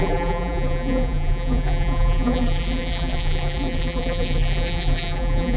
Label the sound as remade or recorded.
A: remade